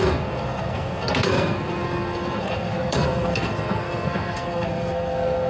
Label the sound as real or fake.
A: fake